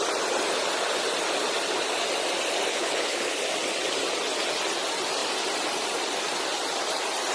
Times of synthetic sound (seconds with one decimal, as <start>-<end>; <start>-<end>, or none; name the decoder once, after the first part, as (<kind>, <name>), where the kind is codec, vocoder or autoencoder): 2.7-3.4 (codec, HILCodec)